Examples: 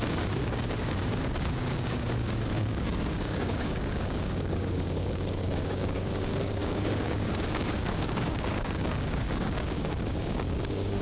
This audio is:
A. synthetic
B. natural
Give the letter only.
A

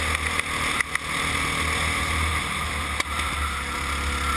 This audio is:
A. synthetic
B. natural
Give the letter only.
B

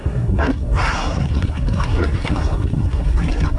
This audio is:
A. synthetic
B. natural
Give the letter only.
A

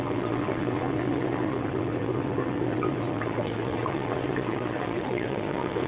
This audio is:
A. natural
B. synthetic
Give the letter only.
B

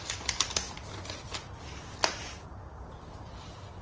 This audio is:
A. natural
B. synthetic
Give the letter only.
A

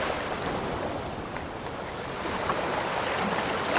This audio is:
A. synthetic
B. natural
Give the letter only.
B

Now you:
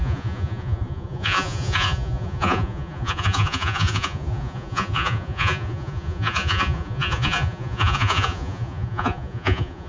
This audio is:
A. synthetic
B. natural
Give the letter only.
A